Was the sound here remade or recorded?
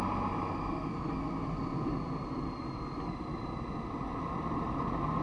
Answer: recorded